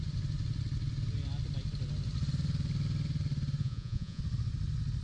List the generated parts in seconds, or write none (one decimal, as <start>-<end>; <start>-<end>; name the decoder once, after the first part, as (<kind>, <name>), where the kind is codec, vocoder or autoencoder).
3.6-4.2 (vocoder, Vocos)

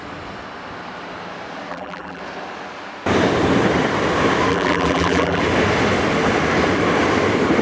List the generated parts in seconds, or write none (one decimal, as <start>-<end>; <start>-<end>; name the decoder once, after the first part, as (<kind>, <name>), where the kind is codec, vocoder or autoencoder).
1.7-2.2 (vocoder, BigVGAN v2); 4.5-5.4

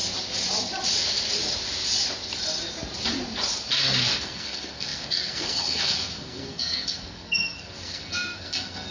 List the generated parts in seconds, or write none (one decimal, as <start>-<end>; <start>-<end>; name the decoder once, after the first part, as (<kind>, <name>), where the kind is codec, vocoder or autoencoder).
4.0-8.9 (codec, SNAC)

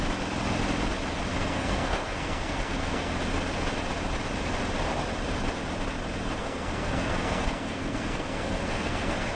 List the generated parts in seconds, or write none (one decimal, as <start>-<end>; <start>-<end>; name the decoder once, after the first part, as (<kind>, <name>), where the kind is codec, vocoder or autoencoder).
1.3-3.1 (codec, SNAC); 6.4-9.4

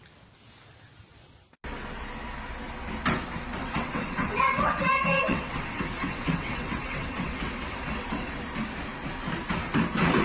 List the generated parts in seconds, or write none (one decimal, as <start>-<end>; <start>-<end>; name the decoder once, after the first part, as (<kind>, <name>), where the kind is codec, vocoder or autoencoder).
3.6-8.3 (vocoder, WaveNeXt)

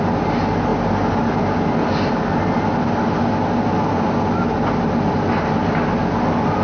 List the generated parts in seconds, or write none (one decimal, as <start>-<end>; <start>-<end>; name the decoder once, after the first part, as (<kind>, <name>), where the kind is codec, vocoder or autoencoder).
none

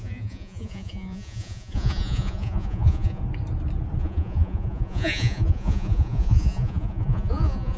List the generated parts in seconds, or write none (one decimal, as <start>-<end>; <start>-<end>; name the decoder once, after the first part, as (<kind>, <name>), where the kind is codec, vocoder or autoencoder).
0.0-3.2 (vocoder, Vocos); 4.0-7.8